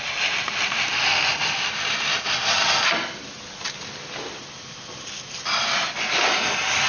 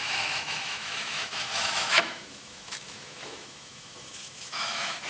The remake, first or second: second